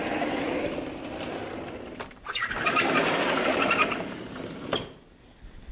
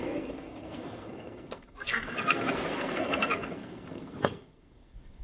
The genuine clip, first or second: first